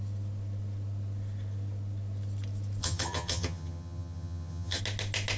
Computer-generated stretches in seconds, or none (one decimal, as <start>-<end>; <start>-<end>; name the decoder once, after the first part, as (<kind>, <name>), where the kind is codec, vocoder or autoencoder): 2.8-4.8 (vocoder, HiFi-GAN)